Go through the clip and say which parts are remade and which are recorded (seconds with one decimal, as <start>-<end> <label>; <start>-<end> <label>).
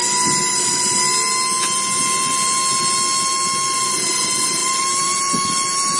0.0-4.6 recorded; 4.6-5.2 remade; 5.2-6.0 recorded